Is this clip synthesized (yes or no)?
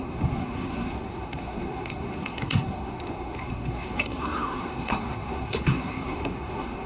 yes